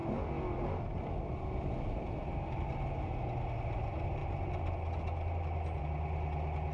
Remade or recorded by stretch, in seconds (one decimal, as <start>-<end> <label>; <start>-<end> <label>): 0.0-6.7 recorded